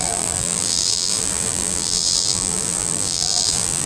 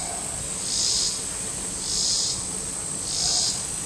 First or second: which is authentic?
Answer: second